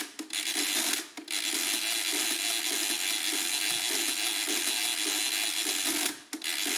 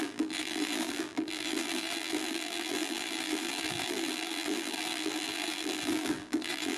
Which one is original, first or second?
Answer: first